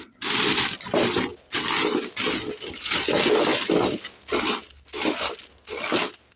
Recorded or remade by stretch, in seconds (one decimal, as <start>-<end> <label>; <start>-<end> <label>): 0.0-6.4 recorded